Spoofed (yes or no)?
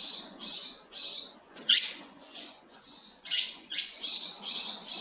yes